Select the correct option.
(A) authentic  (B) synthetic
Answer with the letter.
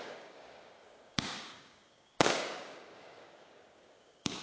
B